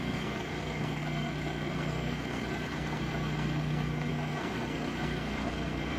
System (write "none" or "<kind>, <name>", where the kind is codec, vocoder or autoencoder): codec, SNAC